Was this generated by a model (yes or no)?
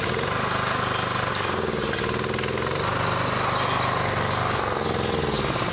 no